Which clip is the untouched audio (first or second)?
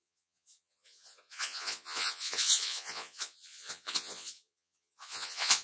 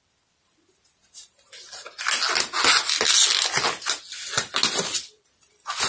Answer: second